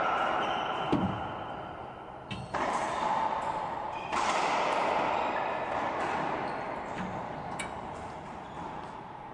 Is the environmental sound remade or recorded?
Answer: recorded